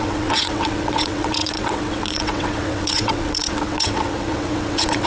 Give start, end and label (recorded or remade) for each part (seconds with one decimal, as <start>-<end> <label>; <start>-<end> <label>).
0.0-5.1 remade